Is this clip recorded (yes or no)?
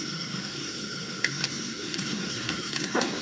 no